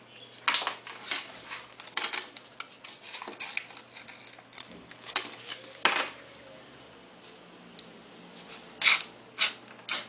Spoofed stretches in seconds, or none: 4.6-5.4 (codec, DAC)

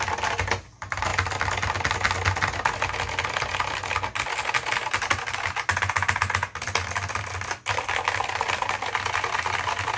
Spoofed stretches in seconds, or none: none